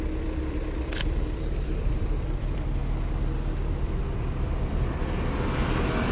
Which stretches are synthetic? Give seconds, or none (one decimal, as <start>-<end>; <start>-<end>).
0.0-2.8; 3.5-6.1